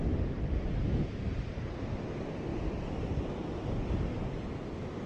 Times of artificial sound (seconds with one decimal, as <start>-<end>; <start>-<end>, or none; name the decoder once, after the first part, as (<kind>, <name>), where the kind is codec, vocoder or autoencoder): 2.5-3.2 (vocoder, BigVGAN v2)